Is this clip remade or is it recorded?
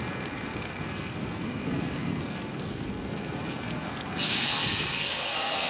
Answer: remade